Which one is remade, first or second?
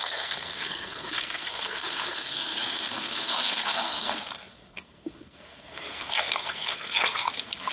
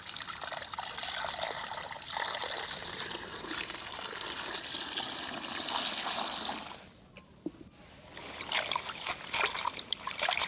first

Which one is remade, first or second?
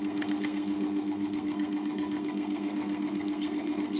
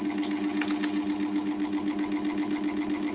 first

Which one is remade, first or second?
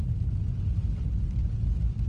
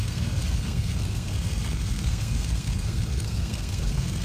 second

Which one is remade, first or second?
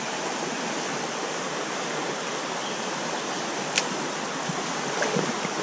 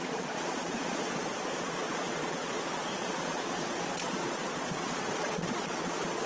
second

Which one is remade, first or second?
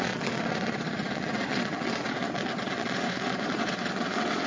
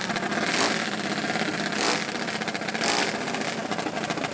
first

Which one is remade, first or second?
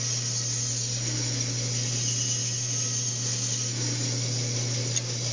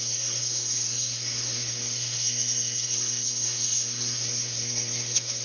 second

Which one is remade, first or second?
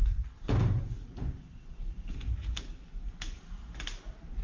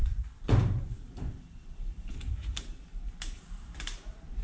second